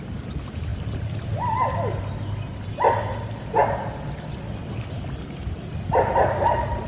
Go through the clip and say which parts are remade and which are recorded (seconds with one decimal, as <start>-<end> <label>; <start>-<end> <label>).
0.0-6.9 recorded